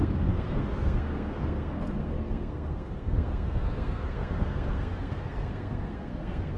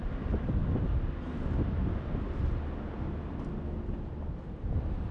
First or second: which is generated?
first